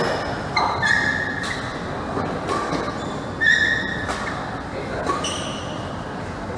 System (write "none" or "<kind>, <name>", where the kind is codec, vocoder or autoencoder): none